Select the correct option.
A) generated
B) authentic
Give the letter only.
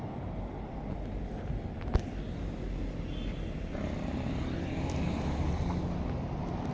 B